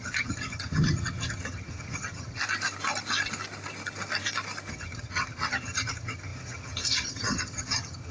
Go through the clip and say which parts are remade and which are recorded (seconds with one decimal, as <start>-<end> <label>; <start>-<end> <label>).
0.0-2.4 remade; 2.4-4.7 recorded; 4.7-8.1 remade